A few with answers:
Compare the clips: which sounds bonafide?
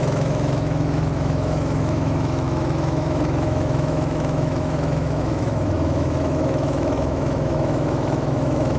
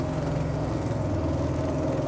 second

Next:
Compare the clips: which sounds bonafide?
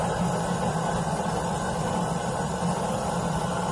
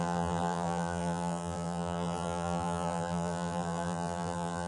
first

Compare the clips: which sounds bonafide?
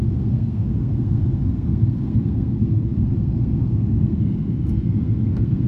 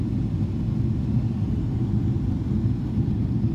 second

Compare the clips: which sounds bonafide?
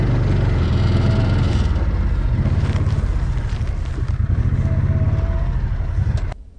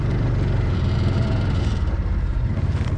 first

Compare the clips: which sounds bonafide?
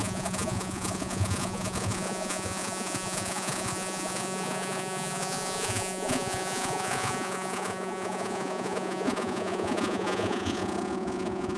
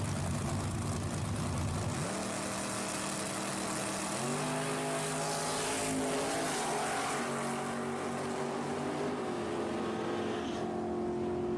second